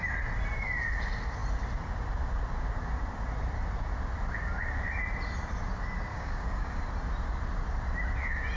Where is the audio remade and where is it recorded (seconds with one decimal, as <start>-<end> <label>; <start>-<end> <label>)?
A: 0.0-6.1 recorded; 6.1-6.8 remade; 6.8-8.6 recorded